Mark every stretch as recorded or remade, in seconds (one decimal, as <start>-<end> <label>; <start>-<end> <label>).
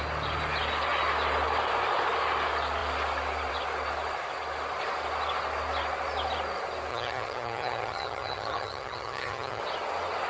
0.0-6.9 recorded; 6.9-9.6 remade; 9.6-10.3 recorded